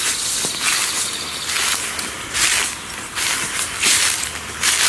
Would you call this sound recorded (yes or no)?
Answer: yes